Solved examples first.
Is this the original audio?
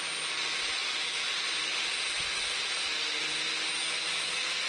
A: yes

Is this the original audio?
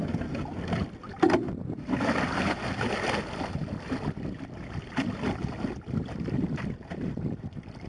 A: yes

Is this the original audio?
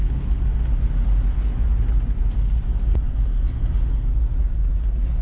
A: yes